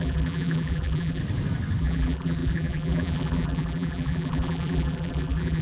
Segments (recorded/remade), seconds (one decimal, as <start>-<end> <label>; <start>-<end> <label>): 0.0-1.2 remade; 1.2-1.8 recorded; 1.8-5.6 remade